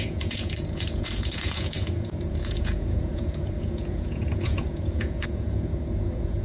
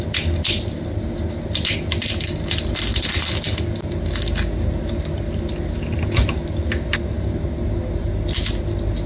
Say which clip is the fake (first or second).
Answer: first